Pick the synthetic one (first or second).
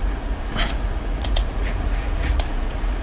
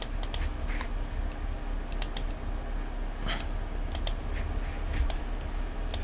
first